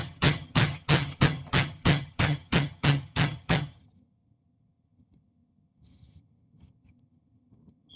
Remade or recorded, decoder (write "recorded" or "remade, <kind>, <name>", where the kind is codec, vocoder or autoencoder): remade, vocoder, HiFi-GAN